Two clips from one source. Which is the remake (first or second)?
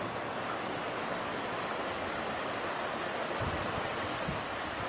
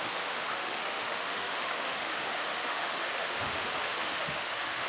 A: second